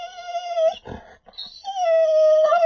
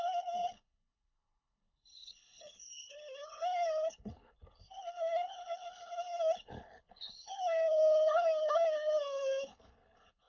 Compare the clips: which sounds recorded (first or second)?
first